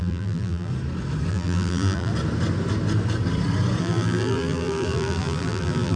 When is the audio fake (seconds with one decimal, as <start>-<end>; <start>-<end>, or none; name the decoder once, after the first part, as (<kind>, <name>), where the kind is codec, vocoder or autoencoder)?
0.0-0.7 (vocoder, BigVGAN v2); 1.3-2.1; 3.8-6.0